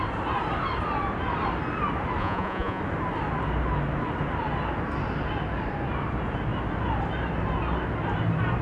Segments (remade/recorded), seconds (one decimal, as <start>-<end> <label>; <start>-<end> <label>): 0.0-2.2 recorded; 2.2-2.8 remade; 2.8-8.6 recorded